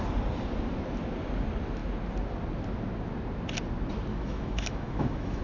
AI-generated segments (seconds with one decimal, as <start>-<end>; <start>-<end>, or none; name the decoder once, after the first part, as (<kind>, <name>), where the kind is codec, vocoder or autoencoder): 4.1-5.4 (autoencoder, DAC-VAE)